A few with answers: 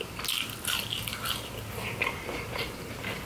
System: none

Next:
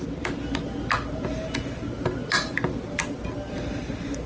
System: none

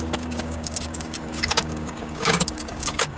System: codec, DAC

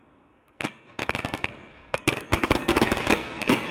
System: codec, SNAC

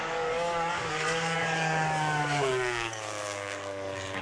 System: codec, DAC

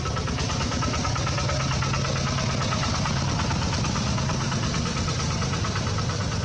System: none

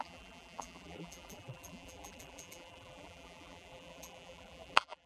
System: vocoder, BigVGAN v2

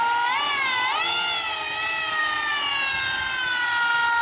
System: none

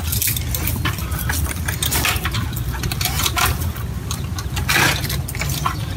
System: none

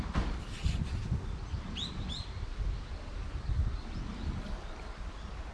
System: none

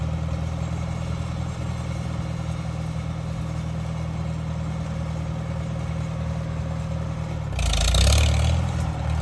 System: none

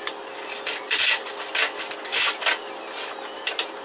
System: none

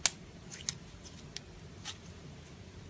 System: none